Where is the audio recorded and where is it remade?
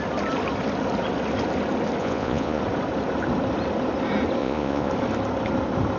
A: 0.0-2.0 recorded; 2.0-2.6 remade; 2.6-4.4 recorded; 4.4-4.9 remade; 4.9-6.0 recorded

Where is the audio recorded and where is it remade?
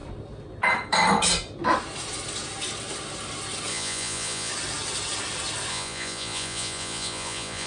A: 0.0-3.7 recorded; 3.7-4.5 remade; 4.5-5.7 recorded; 5.7-7.7 remade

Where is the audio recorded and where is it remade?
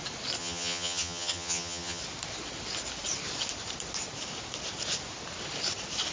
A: 0.0-0.4 recorded; 0.4-2.0 remade; 2.0-6.1 recorded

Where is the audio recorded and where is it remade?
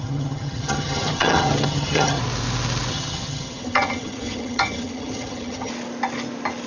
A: 0.0-2.2 remade; 2.2-2.9 recorded; 2.9-5.7 remade; 5.7-6.7 recorded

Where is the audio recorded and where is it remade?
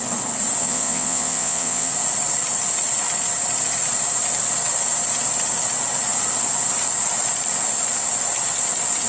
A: 0.0-0.6 recorded; 0.6-1.9 remade; 1.9-9.1 recorded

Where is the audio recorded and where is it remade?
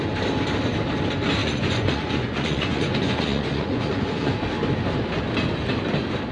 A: 0.0-1.4 recorded; 1.4-4.3 remade; 4.3-6.3 recorded